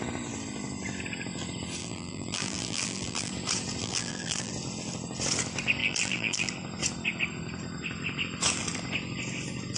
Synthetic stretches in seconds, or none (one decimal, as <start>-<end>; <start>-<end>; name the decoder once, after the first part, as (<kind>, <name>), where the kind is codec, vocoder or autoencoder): 1.8-3.3 (vocoder, BigVGAN v2); 3.8-4.5; 5.8-6.5